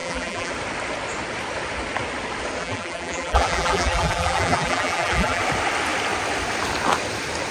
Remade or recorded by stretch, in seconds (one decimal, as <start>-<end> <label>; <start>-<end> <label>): 0.0-0.5 remade; 0.5-2.6 recorded; 2.6-5.4 remade; 5.4-7.5 recorded